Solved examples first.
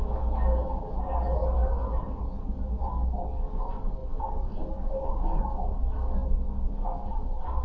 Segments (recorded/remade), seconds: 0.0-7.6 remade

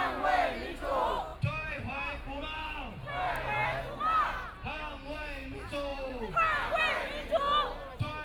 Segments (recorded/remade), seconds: 0.0-1.3 recorded; 1.3-3.8 remade; 3.8-5.9 recorded; 5.9-6.8 remade; 6.8-8.2 recorded

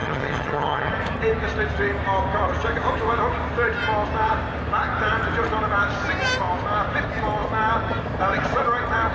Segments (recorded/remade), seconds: 0.0-0.9 remade; 0.9-9.1 recorded

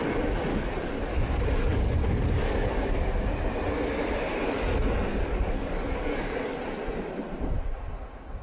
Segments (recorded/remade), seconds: 0.0-0.5 recorded; 0.5-3.1 remade; 3.1-5.1 recorded; 5.1-6.6 remade; 6.6-8.4 recorded

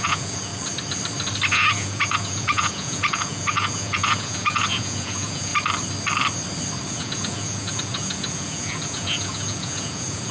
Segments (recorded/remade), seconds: 0.0-0.5 remade; 0.5-1.5 recorded; 1.5-5.5 remade; 5.5-6.9 recorded; 6.9-10.3 remade

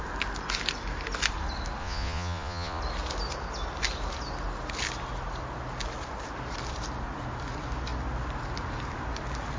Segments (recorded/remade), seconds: 0.0-1.8 recorded; 1.8-2.8 remade; 2.8-9.6 recorded